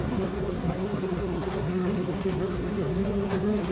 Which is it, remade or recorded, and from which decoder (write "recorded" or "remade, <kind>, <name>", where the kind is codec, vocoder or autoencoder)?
remade, codec, SNAC